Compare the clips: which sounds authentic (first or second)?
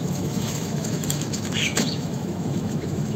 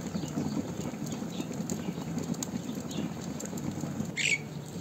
second